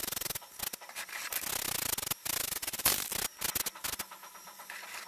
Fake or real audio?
real